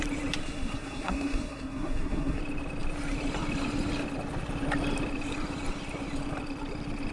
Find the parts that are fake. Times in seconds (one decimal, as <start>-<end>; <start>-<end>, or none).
0.4-2.4